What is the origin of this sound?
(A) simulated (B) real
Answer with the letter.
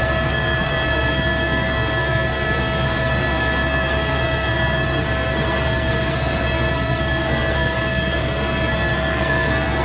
A